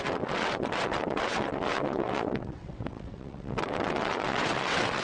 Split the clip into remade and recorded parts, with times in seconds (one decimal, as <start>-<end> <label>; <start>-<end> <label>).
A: 0.0-5.0 remade